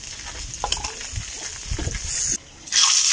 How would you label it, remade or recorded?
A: recorded